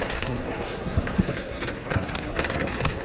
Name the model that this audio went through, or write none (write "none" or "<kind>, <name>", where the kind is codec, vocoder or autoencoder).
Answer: codec, SNAC